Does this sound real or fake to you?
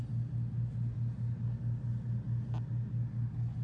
real